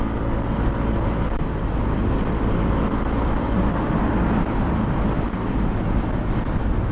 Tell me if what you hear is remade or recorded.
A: recorded